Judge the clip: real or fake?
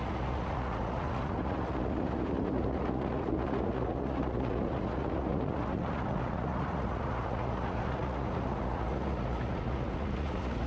fake